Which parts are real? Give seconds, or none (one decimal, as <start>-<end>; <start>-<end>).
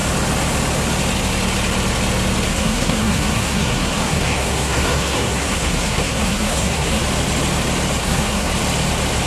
0.0-2.5; 7.0-8.0; 8.5-9.3